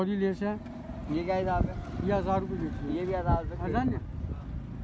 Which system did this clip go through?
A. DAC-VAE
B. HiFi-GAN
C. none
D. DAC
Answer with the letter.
C